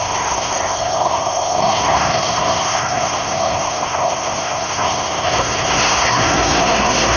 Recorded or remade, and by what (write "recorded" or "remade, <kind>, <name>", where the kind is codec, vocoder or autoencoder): remade, codec, SNAC